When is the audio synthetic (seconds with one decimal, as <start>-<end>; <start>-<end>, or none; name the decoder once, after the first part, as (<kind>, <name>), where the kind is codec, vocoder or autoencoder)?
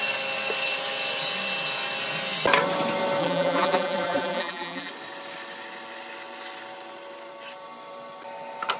3.2-4.9 (vocoder, BigVGAN v2)